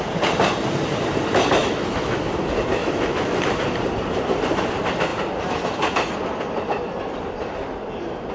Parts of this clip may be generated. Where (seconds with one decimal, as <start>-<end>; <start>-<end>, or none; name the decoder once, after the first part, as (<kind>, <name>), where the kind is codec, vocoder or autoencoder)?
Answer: 1.6-2.2 (autoencoder, DAC-VAE); 2.8-3.4